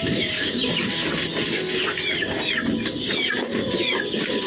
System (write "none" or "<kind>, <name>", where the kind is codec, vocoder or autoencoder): none